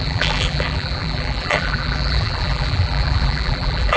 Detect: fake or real fake